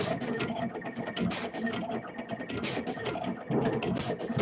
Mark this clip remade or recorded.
recorded